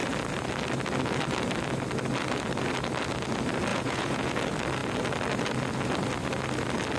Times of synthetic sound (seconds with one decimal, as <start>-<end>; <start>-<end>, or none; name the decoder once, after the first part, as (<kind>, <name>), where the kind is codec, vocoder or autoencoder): 3.7-4.3 (vocoder, Vocos)